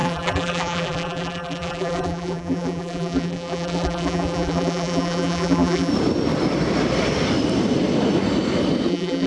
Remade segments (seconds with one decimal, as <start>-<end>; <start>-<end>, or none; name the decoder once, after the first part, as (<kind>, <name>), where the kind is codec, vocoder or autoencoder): 0.0-5.9 (vocoder, BigVGAN v2); 8.9-9.3